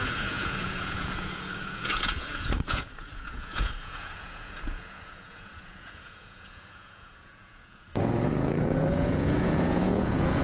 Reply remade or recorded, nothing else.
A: remade